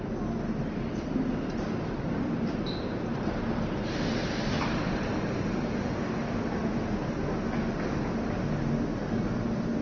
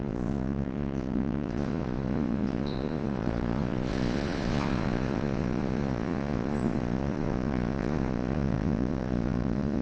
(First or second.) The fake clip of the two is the second